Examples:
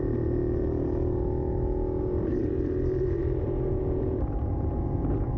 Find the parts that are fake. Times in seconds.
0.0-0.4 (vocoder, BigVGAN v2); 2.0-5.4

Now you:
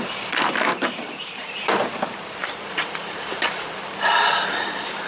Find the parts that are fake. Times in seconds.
0.7-1.6 (vocoder, BigVGAN v2); 2.4-5.1

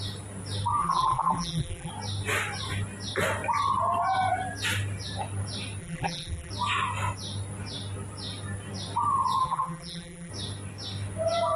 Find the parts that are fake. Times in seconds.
0.8-1.9 (vocoder, BigVGAN v2); 5.8-6.5; 9.4-10.3

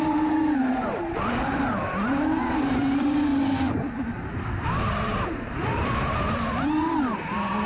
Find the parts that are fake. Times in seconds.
0.0-3.3 (vocoder, BigVGAN v2); 3.9-7.7

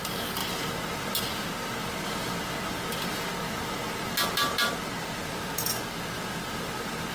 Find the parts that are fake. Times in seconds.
none

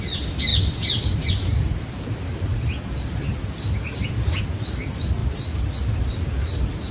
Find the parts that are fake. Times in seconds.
0.5-1.3 (vocoder, BigVGAN v2); 5.2-5.7

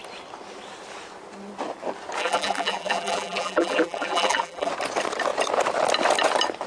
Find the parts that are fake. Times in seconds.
2.2-4.7 (vocoder, BigVGAN v2)

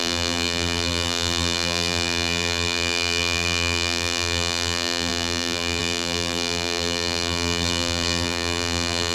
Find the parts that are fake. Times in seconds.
0.0-9.1 (vocoder, BigVGAN v2)